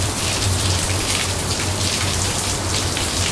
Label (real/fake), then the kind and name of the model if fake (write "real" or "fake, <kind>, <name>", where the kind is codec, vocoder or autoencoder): fake, vocoder, BigVGAN v2